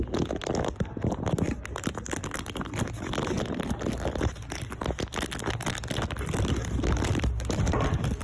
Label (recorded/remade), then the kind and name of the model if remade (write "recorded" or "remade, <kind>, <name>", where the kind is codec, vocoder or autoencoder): recorded